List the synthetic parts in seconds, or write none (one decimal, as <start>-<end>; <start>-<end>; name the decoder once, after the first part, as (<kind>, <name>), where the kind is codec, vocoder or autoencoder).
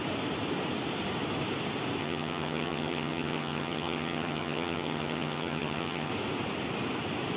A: 2.0-6.1 (vocoder, HiFi-GAN)